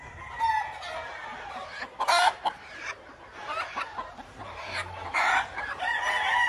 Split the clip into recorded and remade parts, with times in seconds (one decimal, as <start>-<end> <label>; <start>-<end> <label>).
0.0-1.3 recorded; 1.3-2.9 remade; 2.9-4.8 recorded; 4.8-6.1 remade; 6.1-6.5 recorded